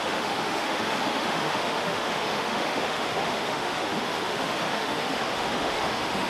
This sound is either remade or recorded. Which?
remade